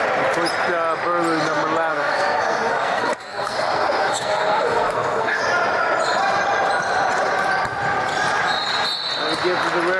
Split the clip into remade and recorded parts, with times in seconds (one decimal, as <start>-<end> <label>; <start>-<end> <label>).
0.0-1.9 recorded; 1.9-5.4 remade; 5.4-10.0 recorded

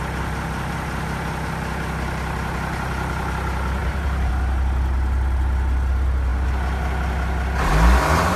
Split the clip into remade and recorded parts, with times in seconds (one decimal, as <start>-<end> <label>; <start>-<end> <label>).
0.0-3.8 recorded; 3.8-4.3 remade; 4.3-8.4 recorded

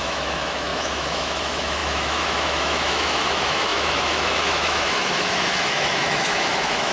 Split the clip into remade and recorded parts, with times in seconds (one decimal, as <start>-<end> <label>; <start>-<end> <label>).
0.0-6.9 remade

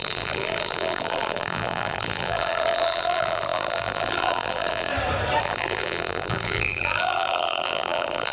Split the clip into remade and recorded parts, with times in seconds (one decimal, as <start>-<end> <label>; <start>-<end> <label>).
0.0-4.9 remade; 4.9-5.4 recorded; 5.4-8.3 remade

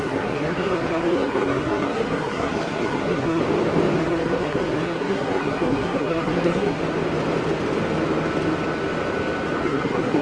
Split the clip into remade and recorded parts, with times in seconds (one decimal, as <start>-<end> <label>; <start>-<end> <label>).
0.0-3.4 remade; 3.4-4.0 recorded; 4.0-6.8 remade; 6.8-9.6 recorded; 9.6-10.2 remade